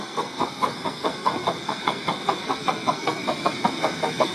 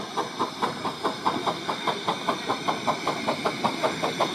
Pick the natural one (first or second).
second